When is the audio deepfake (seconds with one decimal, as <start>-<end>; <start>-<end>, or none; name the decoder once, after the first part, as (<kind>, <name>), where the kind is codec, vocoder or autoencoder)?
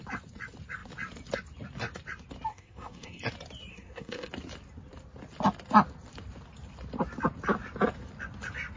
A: 2.5-3.3 (codec, SNAC); 3.7-4.3